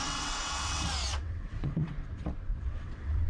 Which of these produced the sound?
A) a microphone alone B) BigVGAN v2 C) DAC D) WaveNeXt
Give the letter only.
D